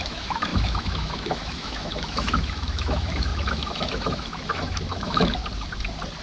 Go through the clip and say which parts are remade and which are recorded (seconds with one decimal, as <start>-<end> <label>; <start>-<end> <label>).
0.0-5.4 remade; 5.4-6.2 recorded